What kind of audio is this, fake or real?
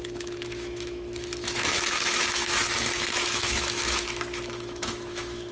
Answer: fake